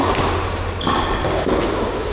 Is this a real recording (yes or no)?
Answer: yes